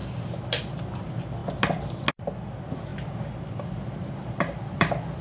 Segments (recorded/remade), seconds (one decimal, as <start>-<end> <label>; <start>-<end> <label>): 0.0-1.4 remade; 1.4-2.1 recorded; 2.1-2.9 remade; 2.9-3.6 recorded; 3.6-5.2 remade